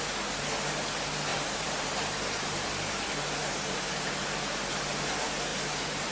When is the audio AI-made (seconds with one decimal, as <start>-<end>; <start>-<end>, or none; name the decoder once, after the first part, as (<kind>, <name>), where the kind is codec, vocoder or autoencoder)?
1.3-3.1 (vocoder, BigVGAN v2); 5.5-6.1